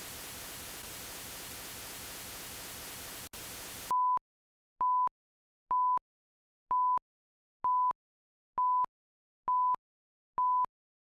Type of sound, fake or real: real